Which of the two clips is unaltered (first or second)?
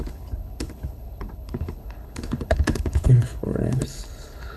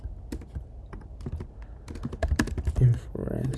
second